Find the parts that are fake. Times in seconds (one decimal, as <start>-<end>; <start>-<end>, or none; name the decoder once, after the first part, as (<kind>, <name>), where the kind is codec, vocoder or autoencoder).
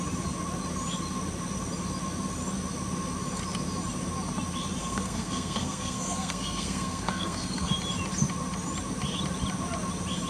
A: 4.8-7.7 (codec, SNAC)